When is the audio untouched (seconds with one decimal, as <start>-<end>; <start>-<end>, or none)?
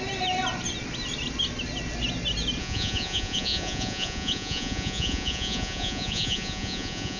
0.0-2.6